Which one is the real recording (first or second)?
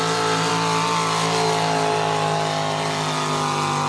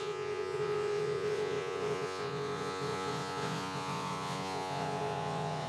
first